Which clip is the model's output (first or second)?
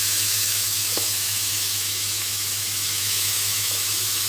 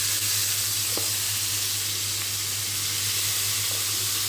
first